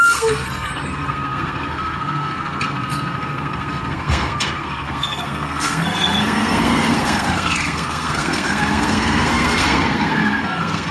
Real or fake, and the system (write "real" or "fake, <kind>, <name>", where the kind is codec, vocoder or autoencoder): fake, codec, SNAC